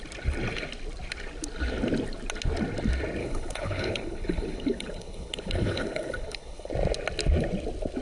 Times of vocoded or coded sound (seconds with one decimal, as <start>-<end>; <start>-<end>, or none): 3.2-6.7

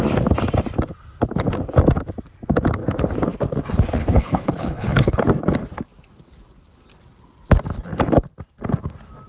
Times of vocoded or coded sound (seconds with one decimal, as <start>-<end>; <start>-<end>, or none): 4.0-5.2